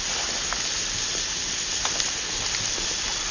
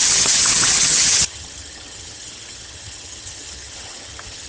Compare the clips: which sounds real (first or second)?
first